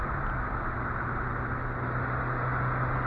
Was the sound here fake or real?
real